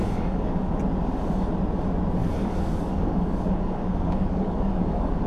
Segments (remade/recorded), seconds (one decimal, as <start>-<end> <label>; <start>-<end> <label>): 0.0-0.8 remade; 0.8-2.2 recorded; 2.2-5.3 remade